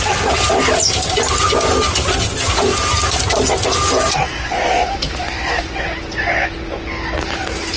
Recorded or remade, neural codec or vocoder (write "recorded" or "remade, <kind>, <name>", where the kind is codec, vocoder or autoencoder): recorded